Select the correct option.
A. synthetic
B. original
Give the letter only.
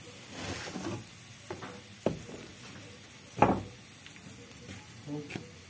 B